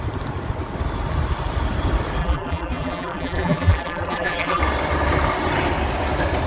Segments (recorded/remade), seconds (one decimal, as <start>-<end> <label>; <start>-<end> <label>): 0.0-2.2 recorded; 2.2-4.6 remade; 4.6-6.5 recorded

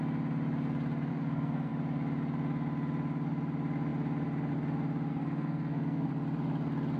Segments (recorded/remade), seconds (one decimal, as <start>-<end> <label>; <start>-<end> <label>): 0.0-1.1 recorded; 1.1-1.7 remade; 1.7-5.1 recorded; 5.1-6.1 remade; 6.1-7.0 recorded

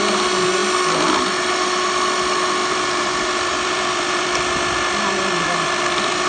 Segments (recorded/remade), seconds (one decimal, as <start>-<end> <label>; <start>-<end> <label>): 0.0-2.6 recorded; 2.6-4.3 remade; 4.3-6.3 recorded

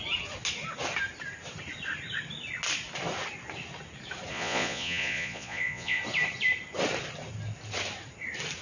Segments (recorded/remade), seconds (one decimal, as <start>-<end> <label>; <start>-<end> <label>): 0.0-4.3 recorded; 4.3-6.0 remade; 6.0-8.6 recorded

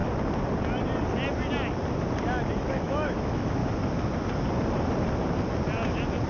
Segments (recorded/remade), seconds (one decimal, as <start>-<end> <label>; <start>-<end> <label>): 0.0-2.6 recorded; 2.6-3.6 remade; 3.6-6.3 recorded

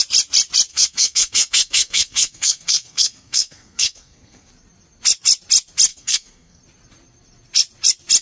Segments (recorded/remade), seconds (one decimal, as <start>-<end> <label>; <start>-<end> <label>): 0.0-0.7 recorded; 0.7-4.5 remade; 4.5-5.9 recorded; 5.9-6.6 remade; 6.6-8.2 recorded

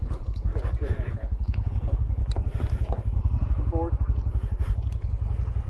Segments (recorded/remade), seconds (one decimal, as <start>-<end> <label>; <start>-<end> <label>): 0.0-0.5 remade; 0.5-1.1 recorded; 1.1-2.2 remade; 2.2-5.7 recorded

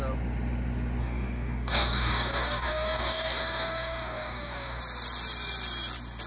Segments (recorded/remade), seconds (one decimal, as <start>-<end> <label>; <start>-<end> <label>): 0.0-1.0 recorded; 1.0-4.8 remade; 4.8-6.3 recorded